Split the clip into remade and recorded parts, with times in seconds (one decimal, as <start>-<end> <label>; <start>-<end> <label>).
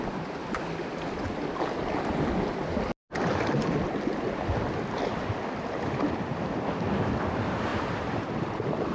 0.0-8.9 recorded